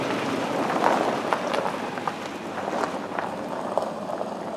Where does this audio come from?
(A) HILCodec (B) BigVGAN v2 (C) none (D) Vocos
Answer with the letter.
C